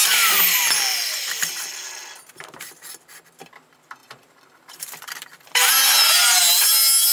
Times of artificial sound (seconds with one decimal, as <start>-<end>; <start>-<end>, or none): 0.9-1.6; 4.0-5.7